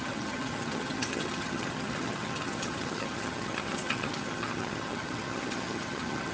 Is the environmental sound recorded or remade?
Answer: remade